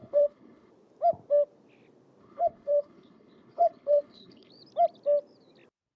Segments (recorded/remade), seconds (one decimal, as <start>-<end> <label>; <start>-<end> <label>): 0.0-0.7 remade; 0.7-2.2 recorded; 2.2-4.5 remade; 4.5-6.0 recorded